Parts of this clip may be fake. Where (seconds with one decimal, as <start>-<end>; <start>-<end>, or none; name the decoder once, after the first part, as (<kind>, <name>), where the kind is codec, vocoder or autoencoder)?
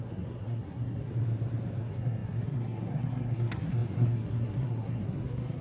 0.0-1.1 (codec, SNAC); 1.8-5.6